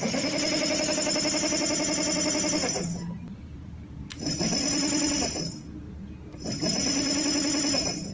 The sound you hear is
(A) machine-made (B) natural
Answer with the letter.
B